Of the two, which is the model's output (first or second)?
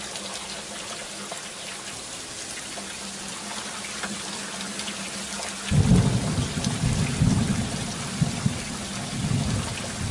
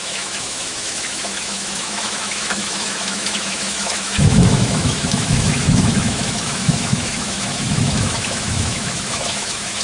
second